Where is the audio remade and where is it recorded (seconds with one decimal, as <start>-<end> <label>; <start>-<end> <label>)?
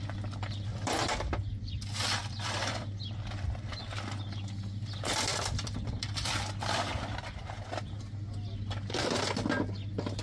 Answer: 0.0-0.7 recorded; 0.7-1.7 remade; 1.7-2.2 recorded; 2.2-3.8 remade; 3.8-5.3 recorded; 5.3-6.9 remade; 6.9-10.2 recorded